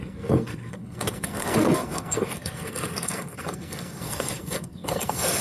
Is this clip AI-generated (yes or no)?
yes